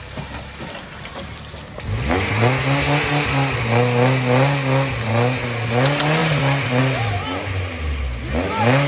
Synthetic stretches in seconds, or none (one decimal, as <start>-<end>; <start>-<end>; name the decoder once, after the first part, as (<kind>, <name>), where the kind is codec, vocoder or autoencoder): none